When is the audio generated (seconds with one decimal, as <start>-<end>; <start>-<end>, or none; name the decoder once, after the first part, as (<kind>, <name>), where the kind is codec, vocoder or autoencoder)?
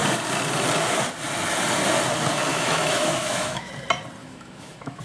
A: 2.5-3.7 (autoencoder, DAC-VAE); 4.2-5.0